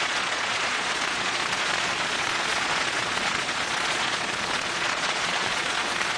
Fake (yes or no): yes